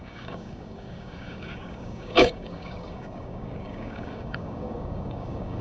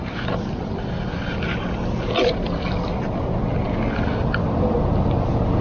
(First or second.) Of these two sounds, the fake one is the first